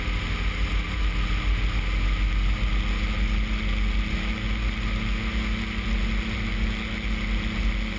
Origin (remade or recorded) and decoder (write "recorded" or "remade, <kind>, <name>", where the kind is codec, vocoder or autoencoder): recorded